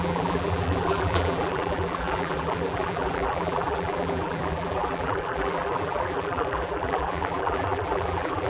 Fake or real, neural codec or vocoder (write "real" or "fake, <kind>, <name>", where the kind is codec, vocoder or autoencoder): fake, vocoder, BigVGAN v2